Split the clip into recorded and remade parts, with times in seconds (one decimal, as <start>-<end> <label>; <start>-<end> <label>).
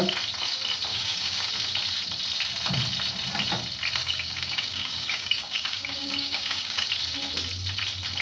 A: 0.0-0.9 recorded; 0.9-1.5 remade; 1.5-4.0 recorded; 4.0-6.9 remade; 6.9-8.2 recorded